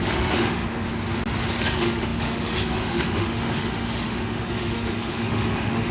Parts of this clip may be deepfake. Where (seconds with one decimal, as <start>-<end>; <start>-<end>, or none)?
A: 0.0-0.9; 1.6-5.9